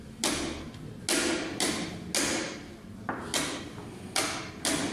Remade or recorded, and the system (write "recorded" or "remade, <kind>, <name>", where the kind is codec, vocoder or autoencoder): recorded